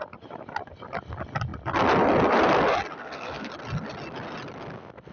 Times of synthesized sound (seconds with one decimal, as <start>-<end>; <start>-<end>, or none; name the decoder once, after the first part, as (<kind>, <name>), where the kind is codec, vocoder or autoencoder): 3.0-3.5 (codec, SNAC)